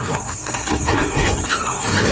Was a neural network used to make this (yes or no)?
yes